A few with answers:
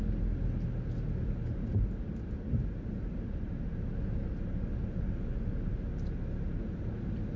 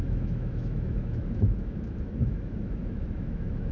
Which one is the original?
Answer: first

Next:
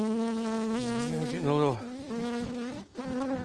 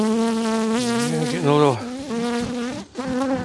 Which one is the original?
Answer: second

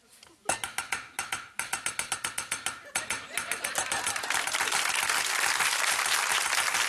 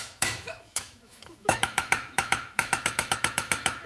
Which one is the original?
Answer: first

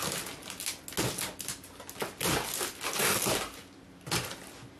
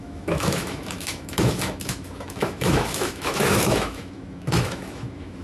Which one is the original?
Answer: first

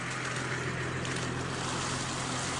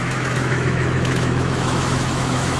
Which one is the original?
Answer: first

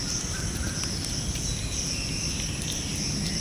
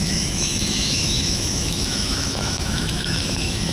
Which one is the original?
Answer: first